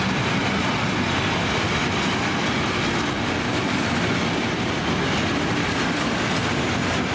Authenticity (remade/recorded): recorded